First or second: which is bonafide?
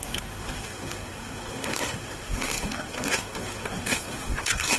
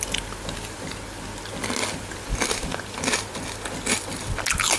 second